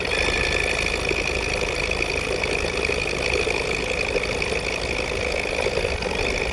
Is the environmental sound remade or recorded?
recorded